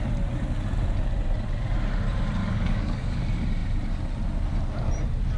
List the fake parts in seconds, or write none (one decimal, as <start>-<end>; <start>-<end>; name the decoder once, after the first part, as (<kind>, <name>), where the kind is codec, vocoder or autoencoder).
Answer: 2.4-3.2 (codec, DAC)